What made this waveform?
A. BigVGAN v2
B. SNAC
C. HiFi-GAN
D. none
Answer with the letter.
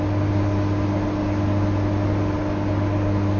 D